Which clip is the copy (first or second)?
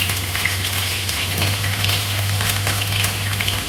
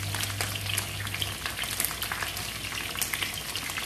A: first